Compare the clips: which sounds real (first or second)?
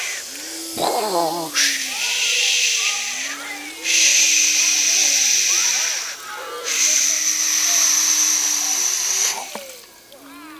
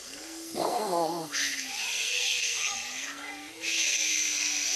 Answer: first